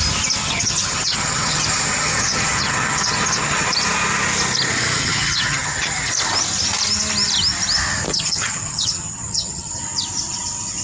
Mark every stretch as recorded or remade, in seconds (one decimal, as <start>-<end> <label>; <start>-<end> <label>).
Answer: 0.0-0.4 recorded; 0.4-3.7 remade; 3.7-5.0 recorded; 5.0-6.1 remade; 6.1-8.1 recorded; 8.1-9.7 remade; 9.7-10.8 recorded